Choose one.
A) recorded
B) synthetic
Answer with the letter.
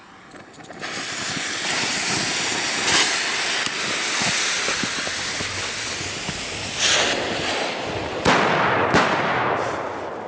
A